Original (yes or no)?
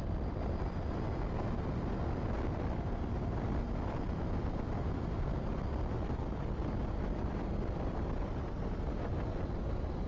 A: yes